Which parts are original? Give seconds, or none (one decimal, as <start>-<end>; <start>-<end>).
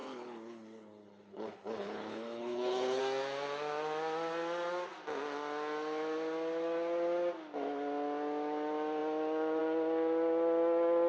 3.0-11.1